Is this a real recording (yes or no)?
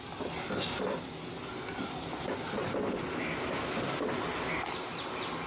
yes